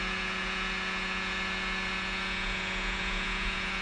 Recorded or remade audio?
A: remade